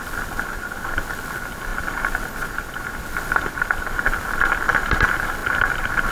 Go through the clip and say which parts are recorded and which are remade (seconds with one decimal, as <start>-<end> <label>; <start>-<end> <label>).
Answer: 0.0-6.1 recorded